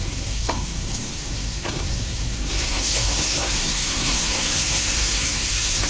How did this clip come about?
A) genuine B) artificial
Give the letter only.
B